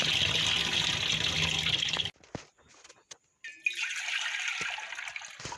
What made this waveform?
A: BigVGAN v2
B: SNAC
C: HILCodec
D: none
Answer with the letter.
D